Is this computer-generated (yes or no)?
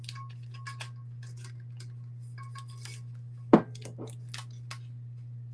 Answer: no